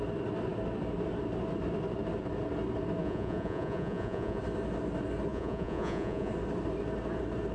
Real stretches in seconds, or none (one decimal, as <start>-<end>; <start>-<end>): 0.0-3.0; 4.4-5.3; 6.3-7.5